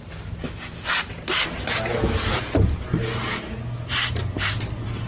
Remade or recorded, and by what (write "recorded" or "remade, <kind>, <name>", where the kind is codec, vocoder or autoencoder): recorded